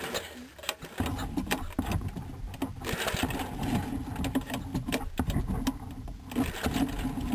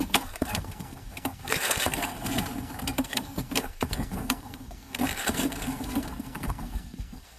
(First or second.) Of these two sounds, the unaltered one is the first